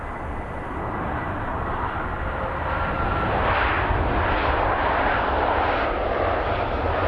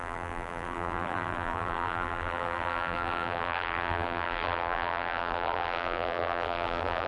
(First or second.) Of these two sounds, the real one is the first